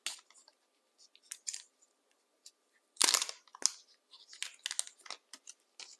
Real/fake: real